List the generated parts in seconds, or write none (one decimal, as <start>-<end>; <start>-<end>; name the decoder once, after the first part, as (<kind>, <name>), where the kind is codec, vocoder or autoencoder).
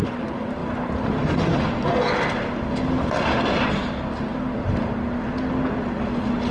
none